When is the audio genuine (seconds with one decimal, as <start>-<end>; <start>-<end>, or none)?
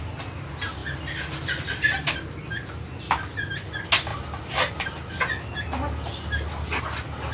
0.0-7.3